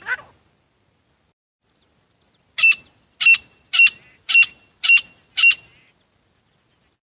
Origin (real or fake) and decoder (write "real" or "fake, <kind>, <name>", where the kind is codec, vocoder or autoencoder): real